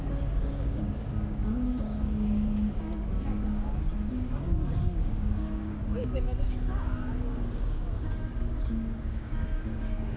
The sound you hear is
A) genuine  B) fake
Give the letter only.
B